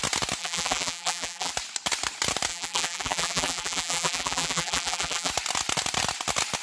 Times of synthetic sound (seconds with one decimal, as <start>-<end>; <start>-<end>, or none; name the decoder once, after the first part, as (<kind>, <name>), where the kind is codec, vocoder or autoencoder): 0.4-1.5 (vocoder, BigVGAN v2); 2.5-5.3